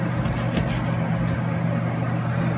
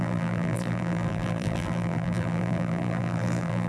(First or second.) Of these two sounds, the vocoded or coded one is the second